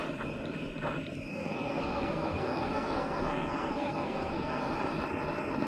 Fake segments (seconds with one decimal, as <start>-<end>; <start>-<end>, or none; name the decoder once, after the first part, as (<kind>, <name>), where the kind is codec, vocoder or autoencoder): 1.3-4.7 (codec, SNAC)